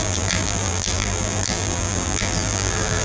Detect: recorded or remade remade